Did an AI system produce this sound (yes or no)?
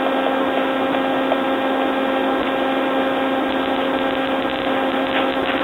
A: no